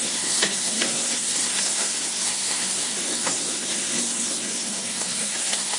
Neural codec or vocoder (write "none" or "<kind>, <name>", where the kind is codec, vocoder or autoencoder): codec, SNAC